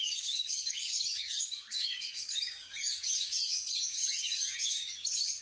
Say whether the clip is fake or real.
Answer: fake